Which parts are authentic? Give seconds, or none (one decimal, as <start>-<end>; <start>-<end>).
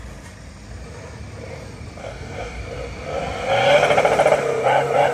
0.0-2.0; 2.6-5.1